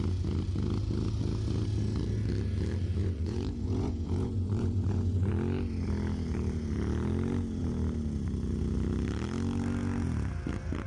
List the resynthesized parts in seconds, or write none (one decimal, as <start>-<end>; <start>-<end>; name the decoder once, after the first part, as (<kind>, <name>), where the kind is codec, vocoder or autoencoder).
3.0-5.3 (vocoder, Vocos)